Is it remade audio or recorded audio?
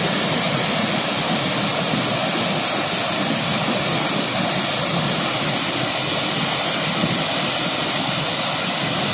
recorded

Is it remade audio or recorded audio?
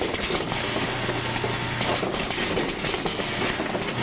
recorded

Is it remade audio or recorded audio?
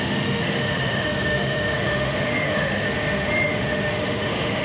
remade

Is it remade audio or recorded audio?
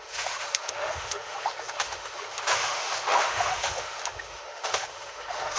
remade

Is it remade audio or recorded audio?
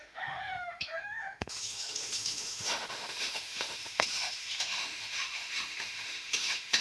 remade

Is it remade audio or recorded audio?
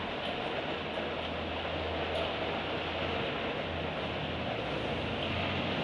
recorded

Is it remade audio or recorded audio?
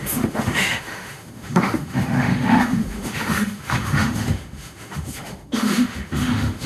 remade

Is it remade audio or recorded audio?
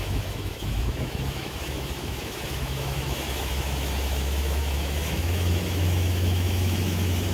remade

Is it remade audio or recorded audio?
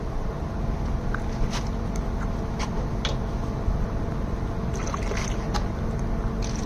recorded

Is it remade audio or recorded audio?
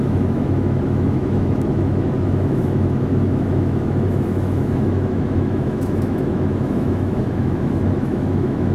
remade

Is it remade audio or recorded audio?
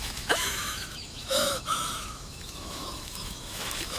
remade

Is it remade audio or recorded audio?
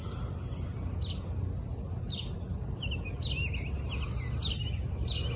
recorded